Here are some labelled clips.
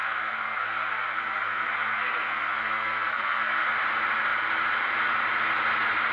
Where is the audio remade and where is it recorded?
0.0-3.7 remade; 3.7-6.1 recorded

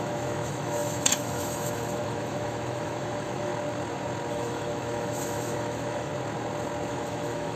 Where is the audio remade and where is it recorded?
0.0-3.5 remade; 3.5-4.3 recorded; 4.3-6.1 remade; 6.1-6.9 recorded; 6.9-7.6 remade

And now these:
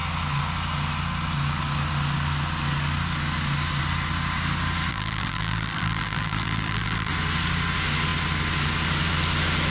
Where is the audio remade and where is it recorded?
0.0-4.9 recorded; 4.9-7.1 remade; 7.1-9.7 recorded

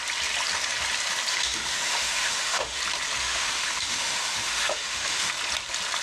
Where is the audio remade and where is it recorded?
0.0-1.3 recorded; 1.3-2.8 remade; 2.8-3.2 recorded; 3.2-5.3 remade; 5.3-6.0 recorded